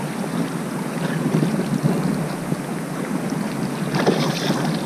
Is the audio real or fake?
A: real